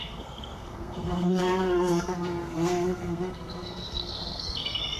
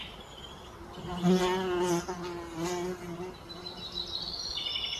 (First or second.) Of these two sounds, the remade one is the first